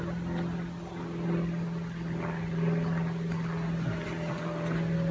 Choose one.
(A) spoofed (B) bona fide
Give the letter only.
B